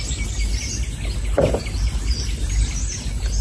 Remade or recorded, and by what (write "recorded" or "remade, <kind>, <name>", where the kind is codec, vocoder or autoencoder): recorded